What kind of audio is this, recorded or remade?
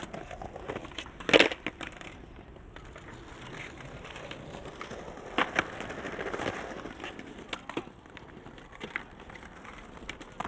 recorded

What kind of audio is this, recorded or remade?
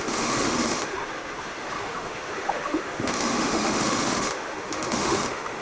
remade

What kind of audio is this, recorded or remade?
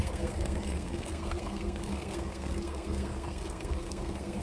remade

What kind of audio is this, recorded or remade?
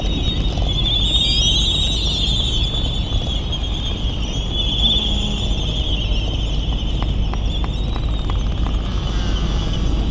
recorded